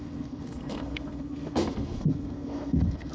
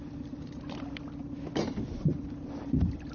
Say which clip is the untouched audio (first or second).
second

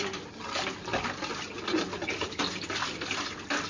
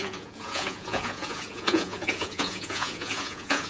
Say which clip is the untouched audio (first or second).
first